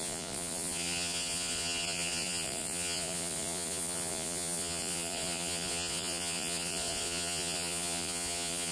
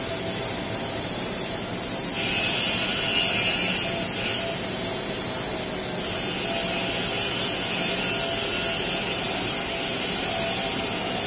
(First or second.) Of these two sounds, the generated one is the first